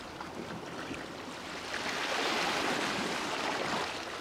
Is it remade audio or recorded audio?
remade